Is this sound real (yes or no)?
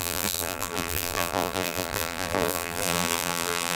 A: no